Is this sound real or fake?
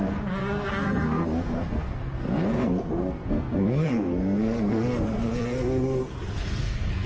fake